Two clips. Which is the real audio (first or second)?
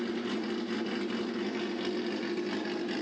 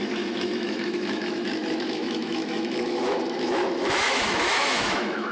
first